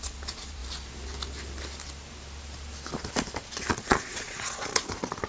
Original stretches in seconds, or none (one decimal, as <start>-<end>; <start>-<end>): 0.6-3.7